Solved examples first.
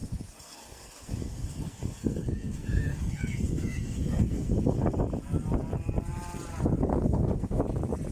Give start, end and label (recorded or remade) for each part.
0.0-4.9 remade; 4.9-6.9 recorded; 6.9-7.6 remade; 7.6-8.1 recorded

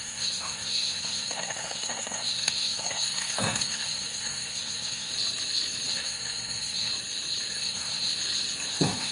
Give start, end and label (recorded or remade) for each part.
0.0-5.1 remade; 5.1-5.9 recorded; 5.9-6.9 remade; 6.9-7.5 recorded; 7.5-8.1 remade; 8.1-8.7 recorded; 8.7-9.1 remade

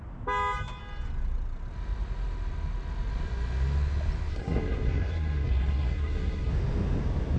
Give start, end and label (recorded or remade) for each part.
0.0-4.3 recorded; 4.3-6.5 remade; 6.5-7.4 recorded